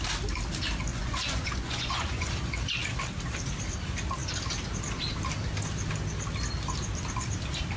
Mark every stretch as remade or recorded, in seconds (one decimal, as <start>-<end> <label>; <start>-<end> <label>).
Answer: 0.0-0.9 recorded; 0.9-2.3 remade; 2.3-7.8 recorded